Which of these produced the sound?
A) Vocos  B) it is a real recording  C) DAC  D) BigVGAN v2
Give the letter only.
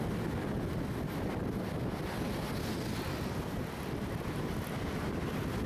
B